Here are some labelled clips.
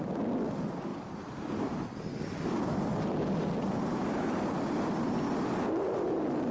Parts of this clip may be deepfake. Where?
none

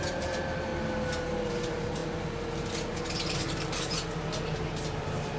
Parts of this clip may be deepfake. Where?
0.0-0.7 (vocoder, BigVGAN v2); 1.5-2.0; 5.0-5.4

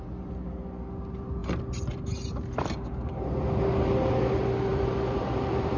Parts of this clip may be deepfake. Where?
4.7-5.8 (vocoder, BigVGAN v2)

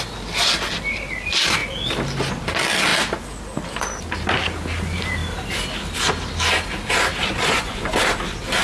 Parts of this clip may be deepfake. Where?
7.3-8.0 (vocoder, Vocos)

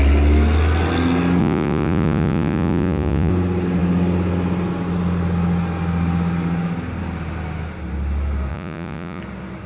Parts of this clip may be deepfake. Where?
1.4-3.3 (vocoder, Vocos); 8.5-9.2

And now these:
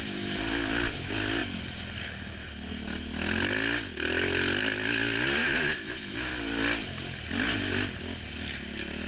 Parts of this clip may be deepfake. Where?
5.4-6.3 (autoencoder, DAC-VAE)

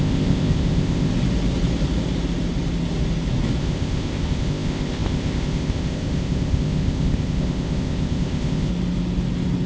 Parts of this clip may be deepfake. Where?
0.0-1.1 (codec, ZipCodec); 3.6-8.7

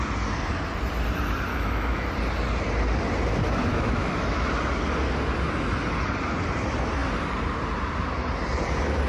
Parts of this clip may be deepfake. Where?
1.5-2.1 (autoencoder, DAC-VAE); 3.7-4.5